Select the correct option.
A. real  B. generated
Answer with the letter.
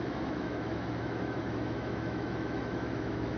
B